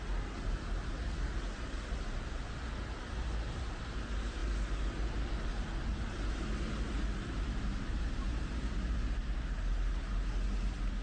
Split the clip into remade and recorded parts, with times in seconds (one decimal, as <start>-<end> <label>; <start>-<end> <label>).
0.0-11.0 recorded